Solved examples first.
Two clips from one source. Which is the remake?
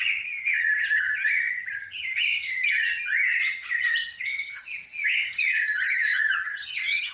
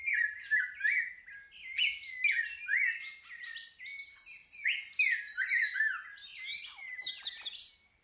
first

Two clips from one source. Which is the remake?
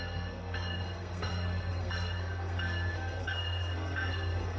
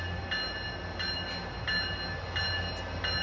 first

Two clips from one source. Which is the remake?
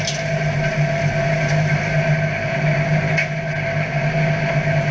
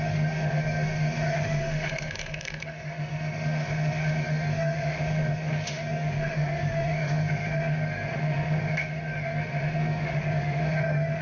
second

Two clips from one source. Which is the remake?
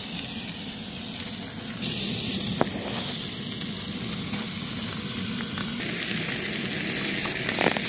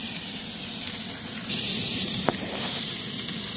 second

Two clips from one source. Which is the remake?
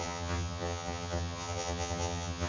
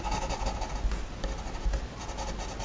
first